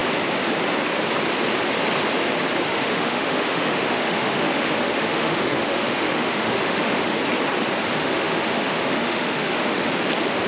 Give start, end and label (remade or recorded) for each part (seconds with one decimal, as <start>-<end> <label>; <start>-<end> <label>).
0.0-2.7 recorded; 2.7-7.2 remade; 7.2-8.0 recorded; 8.0-9.9 remade; 9.9-10.5 recorded